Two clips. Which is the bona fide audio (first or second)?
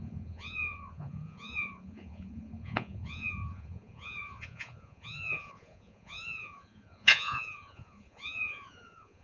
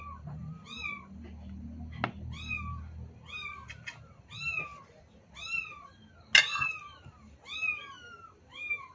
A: second